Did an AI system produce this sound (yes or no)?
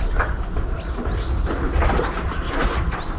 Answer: no